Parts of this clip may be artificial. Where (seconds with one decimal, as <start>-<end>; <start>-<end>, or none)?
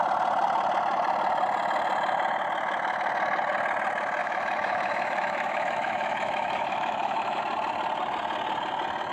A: 4.2-7.4